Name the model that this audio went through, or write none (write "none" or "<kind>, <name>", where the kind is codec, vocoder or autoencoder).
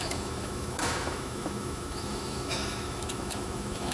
autoencoder, DAC-VAE